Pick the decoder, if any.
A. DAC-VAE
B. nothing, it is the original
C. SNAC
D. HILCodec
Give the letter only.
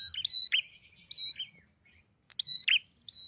B